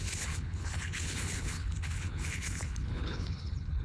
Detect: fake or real fake